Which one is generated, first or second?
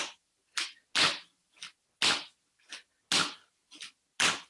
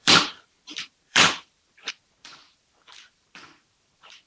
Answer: second